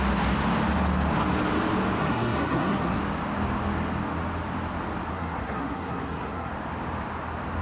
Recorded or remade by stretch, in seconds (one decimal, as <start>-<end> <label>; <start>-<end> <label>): 0.0-2.0 recorded; 2.0-3.0 remade; 3.0-5.1 recorded; 5.1-6.5 remade; 6.5-7.6 recorded